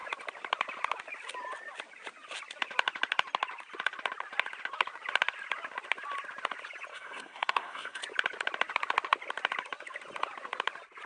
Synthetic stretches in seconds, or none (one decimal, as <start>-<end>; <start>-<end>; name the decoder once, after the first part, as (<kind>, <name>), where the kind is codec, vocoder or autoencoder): 6.9-8.0 (codec, SNAC)